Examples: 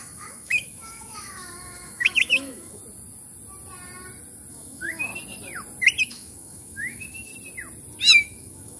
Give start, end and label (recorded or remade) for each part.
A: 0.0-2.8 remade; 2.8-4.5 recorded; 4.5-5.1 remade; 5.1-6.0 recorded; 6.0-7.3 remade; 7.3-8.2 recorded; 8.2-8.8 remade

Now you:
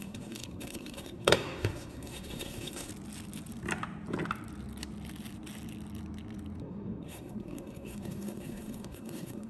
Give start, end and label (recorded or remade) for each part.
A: 0.0-2.9 remade; 2.9-6.6 recorded; 6.6-9.5 remade

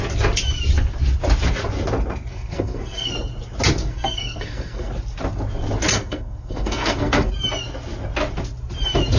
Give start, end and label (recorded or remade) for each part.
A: 0.0-2.3 recorded; 2.3-3.1 remade; 3.1-3.8 recorded; 3.8-4.9 remade; 4.9-5.9 recorded; 5.9-7.3 remade; 7.3-9.2 recorded

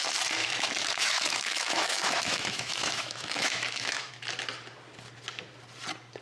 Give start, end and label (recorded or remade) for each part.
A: 0.0-0.4 recorded; 0.4-4.1 remade; 4.1-6.2 recorded

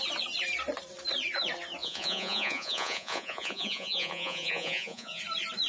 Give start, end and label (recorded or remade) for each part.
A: 0.0-1.8 recorded; 1.8-5.2 remade; 5.2-5.7 recorded